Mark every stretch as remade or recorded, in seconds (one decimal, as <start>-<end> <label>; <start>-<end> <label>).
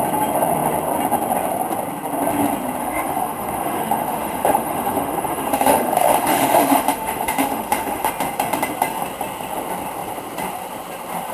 0.0-2.8 recorded; 2.8-8.1 remade; 8.1-11.3 recorded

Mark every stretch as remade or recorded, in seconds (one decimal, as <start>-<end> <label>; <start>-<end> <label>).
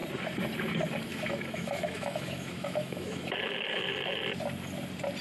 0.0-1.1 recorded; 1.1-4.2 remade; 4.2-5.2 recorded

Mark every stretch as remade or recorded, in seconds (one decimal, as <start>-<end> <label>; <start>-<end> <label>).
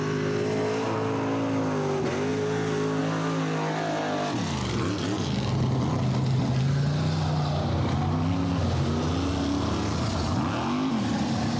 0.0-11.6 recorded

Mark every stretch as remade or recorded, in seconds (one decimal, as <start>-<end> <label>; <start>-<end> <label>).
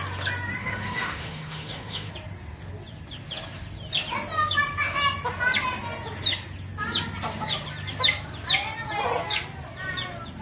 0.0-0.6 recorded; 0.6-2.1 remade; 2.1-10.4 recorded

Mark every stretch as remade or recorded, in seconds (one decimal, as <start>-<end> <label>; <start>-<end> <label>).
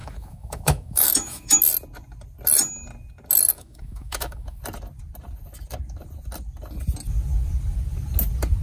0.0-1.6 remade; 1.6-3.5 recorded; 3.5-4.6 remade; 4.6-8.6 recorded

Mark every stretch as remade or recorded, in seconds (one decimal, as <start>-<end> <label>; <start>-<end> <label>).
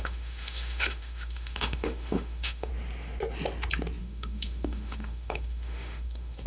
0.0-2.7 remade; 2.7-4.0 recorded; 4.0-6.5 remade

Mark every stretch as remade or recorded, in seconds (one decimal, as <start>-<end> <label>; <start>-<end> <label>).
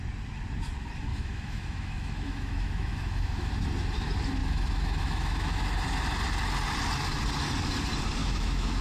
0.0-1.1 recorded; 1.1-3.5 remade; 3.5-4.4 recorded; 4.4-5.6 remade; 5.6-8.2 recorded; 8.2-8.8 remade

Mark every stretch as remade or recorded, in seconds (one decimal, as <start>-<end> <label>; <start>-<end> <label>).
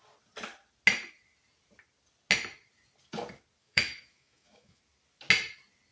0.0-3.6 recorded; 3.6-4.8 remade; 4.8-5.9 recorded